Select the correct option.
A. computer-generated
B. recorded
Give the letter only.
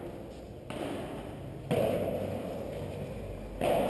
B